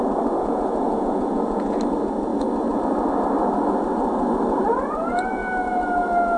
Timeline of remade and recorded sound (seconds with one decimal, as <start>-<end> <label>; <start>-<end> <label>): 0.0-0.4 recorded; 0.4-1.8 remade; 1.8-6.4 recorded